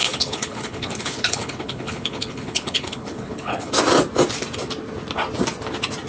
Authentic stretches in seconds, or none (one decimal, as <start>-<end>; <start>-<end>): 3.7-6.1